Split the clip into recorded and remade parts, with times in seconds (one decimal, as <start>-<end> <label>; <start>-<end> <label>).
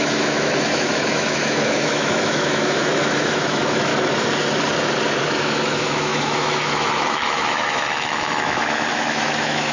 0.0-3.9 remade; 3.9-5.2 recorded; 5.2-9.7 remade